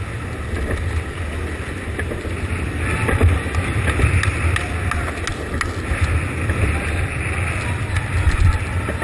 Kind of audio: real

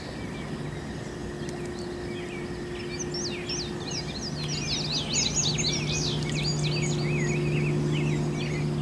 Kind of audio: real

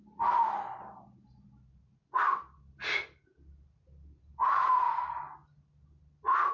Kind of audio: real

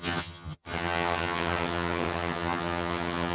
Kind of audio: fake